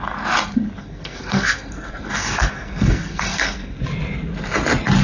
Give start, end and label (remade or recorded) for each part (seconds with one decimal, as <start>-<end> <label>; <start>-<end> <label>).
0.0-0.8 recorded; 0.8-3.8 remade; 3.8-5.0 recorded